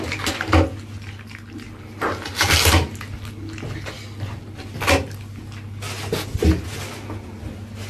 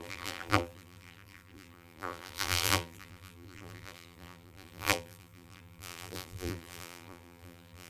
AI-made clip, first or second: second